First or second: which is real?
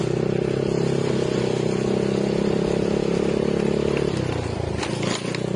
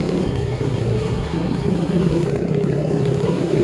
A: first